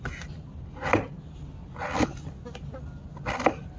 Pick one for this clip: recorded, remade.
recorded